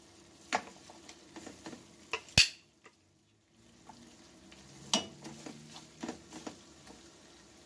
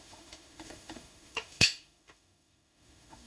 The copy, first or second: second